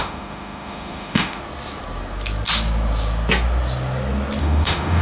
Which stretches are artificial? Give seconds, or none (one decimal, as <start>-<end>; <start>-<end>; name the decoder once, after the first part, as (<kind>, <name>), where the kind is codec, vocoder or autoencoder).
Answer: 0.0-1.4 (autoencoder, DAC-VAE); 4.4-5.0